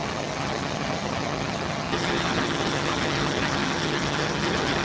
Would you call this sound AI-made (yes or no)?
yes